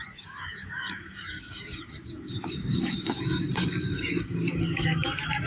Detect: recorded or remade remade